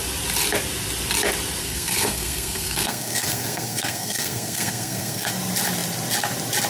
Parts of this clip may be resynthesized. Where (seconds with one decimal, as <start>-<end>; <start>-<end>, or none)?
1.6-5.3